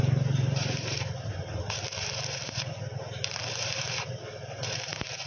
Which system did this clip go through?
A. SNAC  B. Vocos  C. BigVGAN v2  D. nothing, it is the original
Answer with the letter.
C